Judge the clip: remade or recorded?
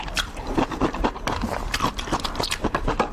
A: recorded